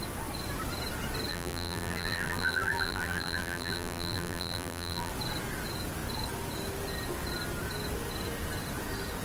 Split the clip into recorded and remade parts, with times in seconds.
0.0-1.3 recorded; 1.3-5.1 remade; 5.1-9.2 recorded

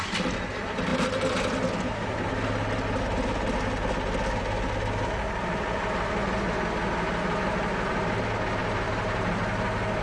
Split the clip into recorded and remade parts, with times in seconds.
0.0-8.6 recorded; 8.6-9.3 remade; 9.3-10.0 recorded

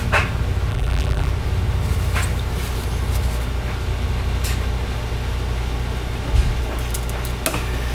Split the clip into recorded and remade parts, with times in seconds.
0.0-0.7 recorded; 0.7-1.3 remade; 1.3-7.9 recorded